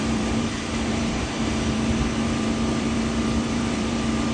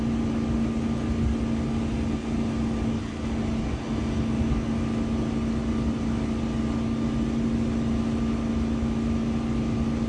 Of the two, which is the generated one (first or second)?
first